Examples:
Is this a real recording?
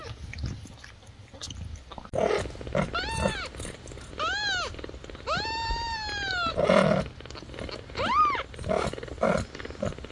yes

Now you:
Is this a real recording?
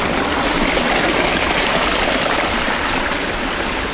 yes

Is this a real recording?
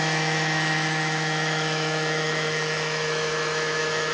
no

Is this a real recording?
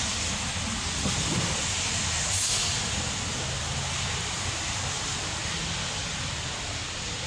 yes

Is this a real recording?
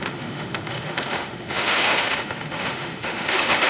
no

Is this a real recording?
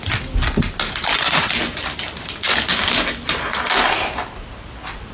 yes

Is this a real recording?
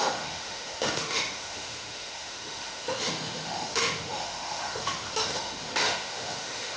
no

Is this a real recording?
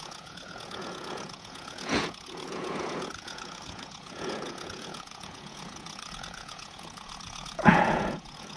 no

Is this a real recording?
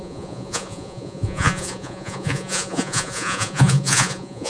no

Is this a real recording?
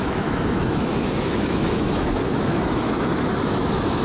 no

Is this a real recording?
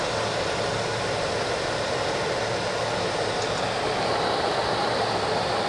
yes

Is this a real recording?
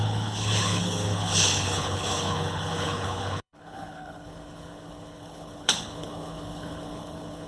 no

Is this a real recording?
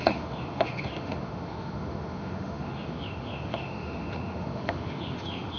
no